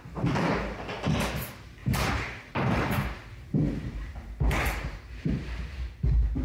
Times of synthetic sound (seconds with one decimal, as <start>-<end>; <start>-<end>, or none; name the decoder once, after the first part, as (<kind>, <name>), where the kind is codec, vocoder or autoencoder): 1.8-5.6 (vocoder, BigVGAN v2)